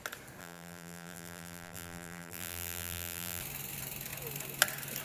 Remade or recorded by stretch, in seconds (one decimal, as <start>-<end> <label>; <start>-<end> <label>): 0.0-0.4 recorded; 0.4-3.4 remade; 3.4-5.0 recorded